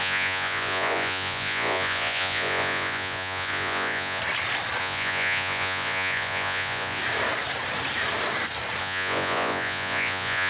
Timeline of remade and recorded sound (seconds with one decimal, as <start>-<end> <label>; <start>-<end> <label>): 0.0-4.2 remade; 4.2-4.8 recorded; 4.8-7.0 remade; 7.0-8.8 recorded; 8.8-10.5 remade